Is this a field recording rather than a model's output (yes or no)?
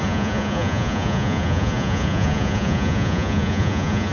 no